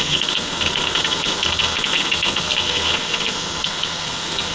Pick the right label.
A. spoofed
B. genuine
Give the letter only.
A